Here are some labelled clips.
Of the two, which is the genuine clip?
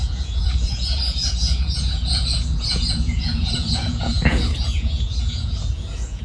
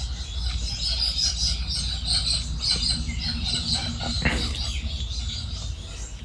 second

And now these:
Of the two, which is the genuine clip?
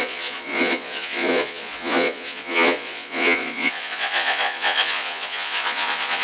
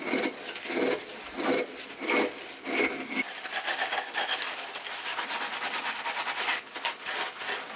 second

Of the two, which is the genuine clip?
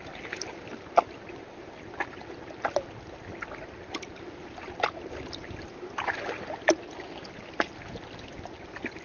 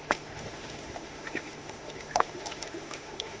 first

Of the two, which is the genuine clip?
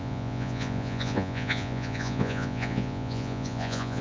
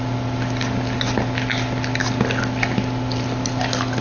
second